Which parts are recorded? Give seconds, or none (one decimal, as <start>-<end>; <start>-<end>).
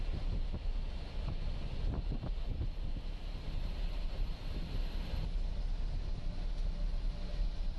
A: 0.0-7.8